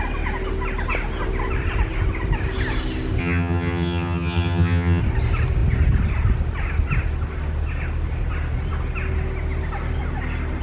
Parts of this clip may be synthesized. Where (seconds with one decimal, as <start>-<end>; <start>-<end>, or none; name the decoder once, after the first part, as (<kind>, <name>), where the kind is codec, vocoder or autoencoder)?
3.2-5.0 (vocoder, HiFi-GAN)